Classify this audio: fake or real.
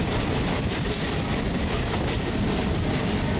real